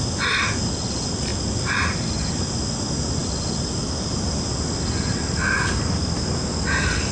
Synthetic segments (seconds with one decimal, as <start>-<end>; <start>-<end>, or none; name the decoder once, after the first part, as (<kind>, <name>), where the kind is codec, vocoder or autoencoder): 1.3-2.3 (vocoder, BigVGAN v2)